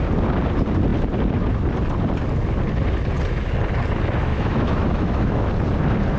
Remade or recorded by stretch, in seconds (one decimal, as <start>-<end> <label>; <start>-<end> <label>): 0.0-4.3 recorded; 4.3-5.5 remade; 5.5-6.2 recorded